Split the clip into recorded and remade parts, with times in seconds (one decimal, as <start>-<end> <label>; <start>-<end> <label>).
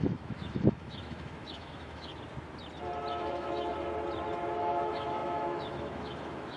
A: 0.0-2.1 remade; 2.1-3.1 recorded; 3.1-3.7 remade; 3.7-4.6 recorded; 4.6-6.6 remade